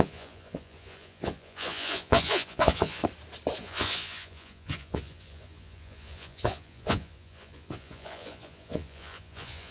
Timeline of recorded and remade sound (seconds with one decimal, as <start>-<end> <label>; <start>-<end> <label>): 0.0-3.0 remade; 3.0-3.6 recorded; 3.6-9.7 remade